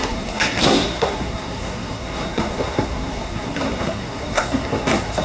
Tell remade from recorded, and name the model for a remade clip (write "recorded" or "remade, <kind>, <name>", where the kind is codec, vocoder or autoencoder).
remade, codec, SNAC